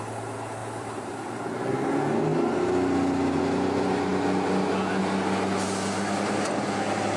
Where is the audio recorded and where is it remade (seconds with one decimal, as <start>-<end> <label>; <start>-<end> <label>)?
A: 0.0-0.6 recorded; 0.6-1.4 remade; 1.4-7.2 recorded